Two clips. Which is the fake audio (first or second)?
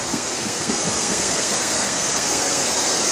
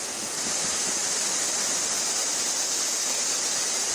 first